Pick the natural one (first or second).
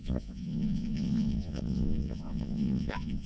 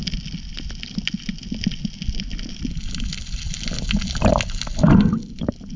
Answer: second